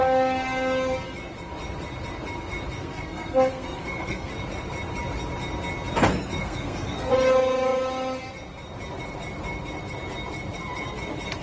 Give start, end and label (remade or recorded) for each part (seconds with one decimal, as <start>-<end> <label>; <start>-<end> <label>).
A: 0.0-2.8 recorded; 2.8-4.3 remade; 4.3-6.4 recorded; 6.4-7.1 remade; 7.1-11.4 recorded

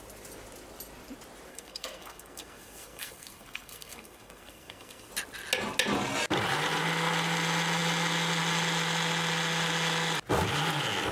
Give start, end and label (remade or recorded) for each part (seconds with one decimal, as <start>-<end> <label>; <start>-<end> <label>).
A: 0.0-1.5 recorded; 1.5-5.1 remade; 5.1-11.1 recorded

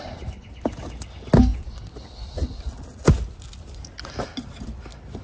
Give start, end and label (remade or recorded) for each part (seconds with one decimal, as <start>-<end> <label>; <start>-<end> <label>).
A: 0.0-5.2 recorded

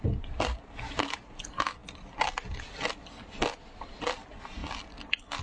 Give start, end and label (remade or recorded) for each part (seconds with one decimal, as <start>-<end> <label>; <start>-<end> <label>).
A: 0.0-5.4 recorded

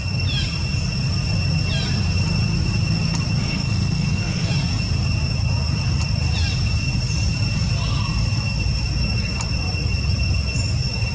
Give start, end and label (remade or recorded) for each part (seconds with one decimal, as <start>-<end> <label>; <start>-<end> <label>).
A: 0.0-3.4 recorded; 3.4-4.5 remade; 4.5-11.1 recorded

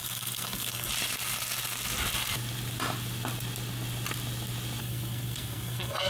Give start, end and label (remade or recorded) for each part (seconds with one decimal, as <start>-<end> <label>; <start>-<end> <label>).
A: 0.0-0.9 remade; 0.9-4.8 recorded; 4.8-6.1 remade

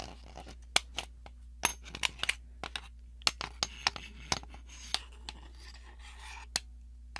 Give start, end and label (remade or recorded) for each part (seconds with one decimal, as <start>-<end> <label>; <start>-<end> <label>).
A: 0.0-7.2 recorded

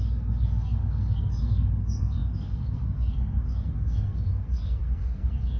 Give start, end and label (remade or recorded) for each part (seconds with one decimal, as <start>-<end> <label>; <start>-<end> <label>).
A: 0.0-5.6 remade